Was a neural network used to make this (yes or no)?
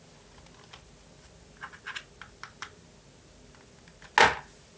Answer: no